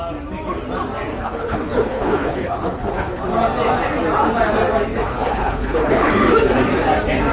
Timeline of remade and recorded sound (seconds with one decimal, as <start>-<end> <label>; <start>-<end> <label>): 0.0-1.1 recorded; 1.1-3.2 remade; 3.2-5.1 recorded; 5.1-6.1 remade; 6.1-7.3 recorded